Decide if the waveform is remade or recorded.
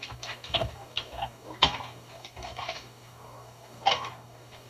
remade